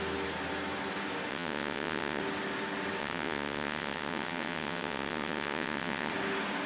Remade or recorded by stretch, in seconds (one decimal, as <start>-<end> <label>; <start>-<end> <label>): 0.0-1.3 recorded; 1.3-2.2 remade; 2.2-3.0 recorded; 3.0-6.1 remade; 6.1-6.7 recorded